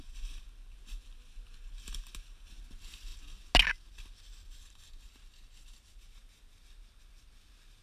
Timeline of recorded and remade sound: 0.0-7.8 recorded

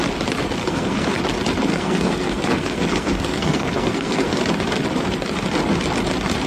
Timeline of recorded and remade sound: 0.0-0.6 recorded; 0.6-1.2 remade; 1.2-1.7 recorded; 1.7-4.4 remade; 4.4-6.5 recorded

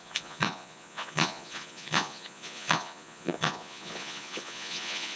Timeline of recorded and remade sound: 0.0-5.2 remade

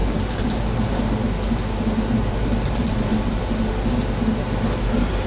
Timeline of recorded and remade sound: 0.0-1.0 remade; 1.0-2.2 recorded; 2.2-2.9 remade; 2.9-5.3 recorded

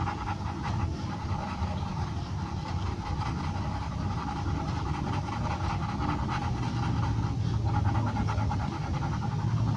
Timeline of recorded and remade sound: 0.0-1.9 recorded; 1.9-5.4 remade; 5.4-9.8 recorded

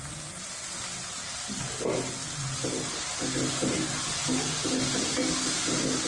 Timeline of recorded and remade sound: 0.0-6.1 recorded